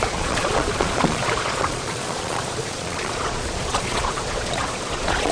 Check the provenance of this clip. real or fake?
fake